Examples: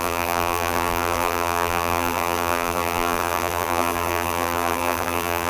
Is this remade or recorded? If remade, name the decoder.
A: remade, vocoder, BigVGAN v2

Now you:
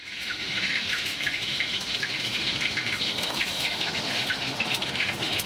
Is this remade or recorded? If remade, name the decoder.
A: remade, autoencoder, DAC-VAE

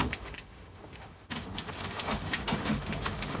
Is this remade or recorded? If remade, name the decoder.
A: remade, autoencoder, DAC-VAE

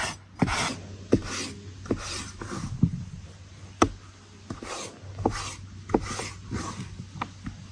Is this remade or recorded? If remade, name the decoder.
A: recorded